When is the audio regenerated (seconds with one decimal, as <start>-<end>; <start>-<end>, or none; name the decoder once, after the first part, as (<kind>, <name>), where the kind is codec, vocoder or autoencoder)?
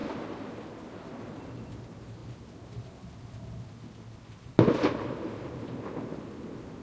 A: none